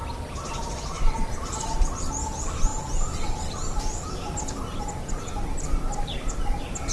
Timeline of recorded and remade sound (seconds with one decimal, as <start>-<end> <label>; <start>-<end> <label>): 0.0-6.9 recorded